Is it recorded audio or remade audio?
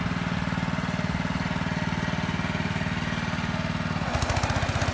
recorded